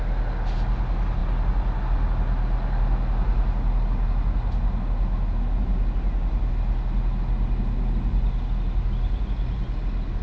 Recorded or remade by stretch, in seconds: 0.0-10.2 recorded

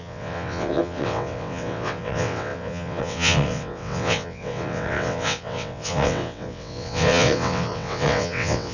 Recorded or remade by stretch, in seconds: 0.0-8.7 remade

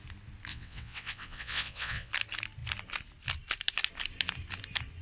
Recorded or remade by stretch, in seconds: 0.0-0.5 recorded; 0.5-2.1 remade; 2.1-5.0 recorded

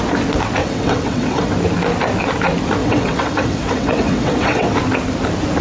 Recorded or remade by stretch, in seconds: 0.0-0.6 recorded; 0.6-1.5 remade; 1.5-2.8 recorded; 2.8-4.7 remade; 4.7-5.6 recorded